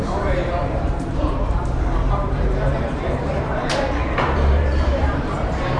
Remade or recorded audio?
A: remade